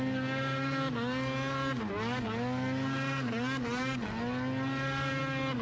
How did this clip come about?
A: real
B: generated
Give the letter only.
A